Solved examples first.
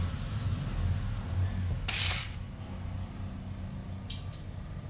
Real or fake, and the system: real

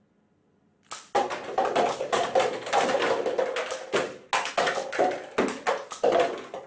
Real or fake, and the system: real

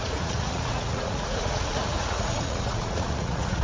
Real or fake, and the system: fake, vocoder, Vocos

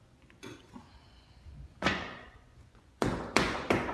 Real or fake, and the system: fake, vocoder, Vocos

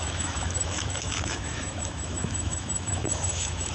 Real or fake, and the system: fake, autoencoder, DAC-VAE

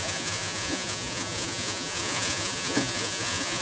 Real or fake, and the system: fake, vocoder, Vocos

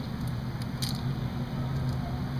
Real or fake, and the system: real